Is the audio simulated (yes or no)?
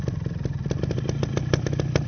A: no